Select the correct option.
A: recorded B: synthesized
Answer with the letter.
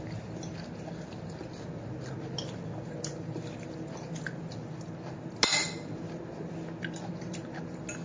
A